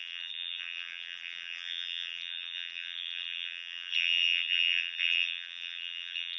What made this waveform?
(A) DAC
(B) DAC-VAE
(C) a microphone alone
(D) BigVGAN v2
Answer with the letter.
D